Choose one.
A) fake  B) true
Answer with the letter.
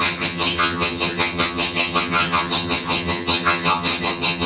A